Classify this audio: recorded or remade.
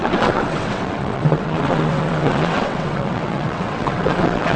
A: remade